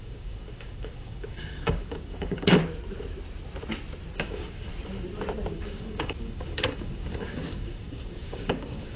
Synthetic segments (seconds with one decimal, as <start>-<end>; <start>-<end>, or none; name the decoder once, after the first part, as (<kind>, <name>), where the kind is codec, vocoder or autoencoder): 0.0-2.6 (codec, DAC); 4.2-4.7; 5.5-9.0

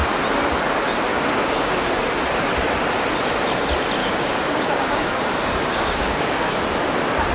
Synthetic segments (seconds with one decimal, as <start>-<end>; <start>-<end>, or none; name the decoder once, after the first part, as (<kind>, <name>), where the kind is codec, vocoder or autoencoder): 1.1-2.0 (codec, DAC); 4.0-6.5

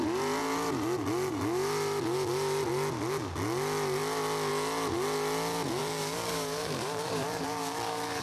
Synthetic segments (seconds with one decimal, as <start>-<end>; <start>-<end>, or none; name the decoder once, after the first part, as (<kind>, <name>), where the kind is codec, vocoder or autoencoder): 5.8-8.2 (codec, DAC)

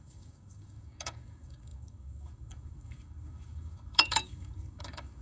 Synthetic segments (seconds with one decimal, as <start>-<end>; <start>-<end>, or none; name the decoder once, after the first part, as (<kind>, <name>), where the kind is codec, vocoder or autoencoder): 0.0-5.2 (codec, DAC)

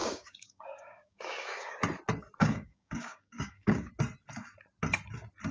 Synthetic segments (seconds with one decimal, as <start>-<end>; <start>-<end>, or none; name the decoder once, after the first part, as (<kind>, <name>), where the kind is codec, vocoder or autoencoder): 0.0-1.8 (codec, DAC); 2.4-3.9

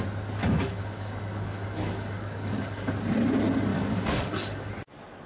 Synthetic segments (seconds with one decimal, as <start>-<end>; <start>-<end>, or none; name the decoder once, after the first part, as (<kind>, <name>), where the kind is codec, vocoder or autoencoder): 0.4-2.9 (codec, DAC); 3.7-4.7

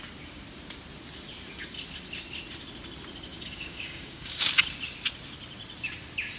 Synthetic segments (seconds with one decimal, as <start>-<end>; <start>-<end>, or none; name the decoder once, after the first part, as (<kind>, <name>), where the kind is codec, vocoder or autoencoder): 3.3-4.5 (codec, DAC)